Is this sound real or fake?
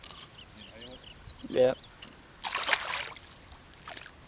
real